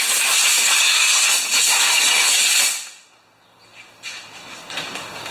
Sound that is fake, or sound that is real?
real